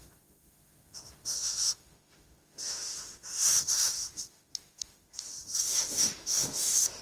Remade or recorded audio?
remade